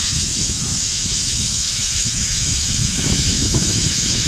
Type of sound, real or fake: fake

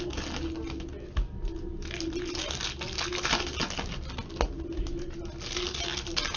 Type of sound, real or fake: real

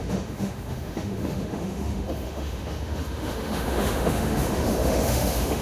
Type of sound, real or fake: fake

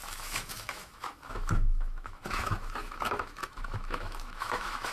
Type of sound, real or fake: fake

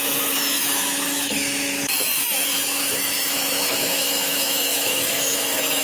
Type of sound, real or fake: fake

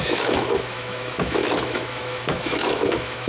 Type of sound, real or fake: fake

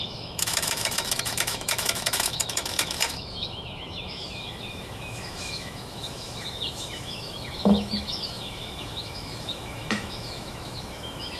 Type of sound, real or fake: fake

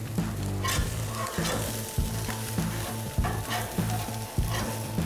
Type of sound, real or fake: real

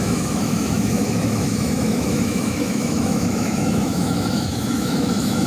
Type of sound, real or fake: fake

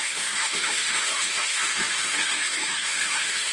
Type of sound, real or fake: fake